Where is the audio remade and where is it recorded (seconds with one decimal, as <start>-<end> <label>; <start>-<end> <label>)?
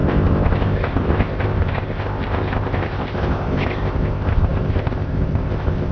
0.0-5.9 remade